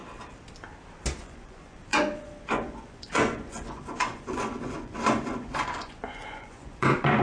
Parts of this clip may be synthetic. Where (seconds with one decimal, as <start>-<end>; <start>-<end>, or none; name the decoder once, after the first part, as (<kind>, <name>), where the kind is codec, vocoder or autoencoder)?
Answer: 1.2-7.2 (vocoder, Vocos)